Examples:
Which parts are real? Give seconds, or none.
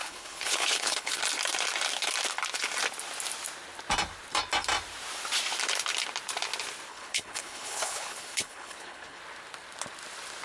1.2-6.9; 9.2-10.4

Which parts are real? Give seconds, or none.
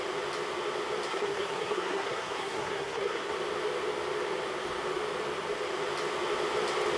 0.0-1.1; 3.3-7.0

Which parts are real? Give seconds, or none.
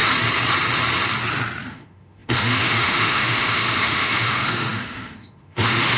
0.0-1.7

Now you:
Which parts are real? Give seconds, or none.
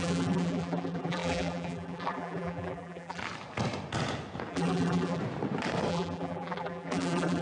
3.2-4.5; 5.2-5.9